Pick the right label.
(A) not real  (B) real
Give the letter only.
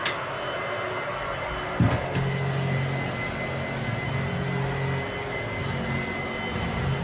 B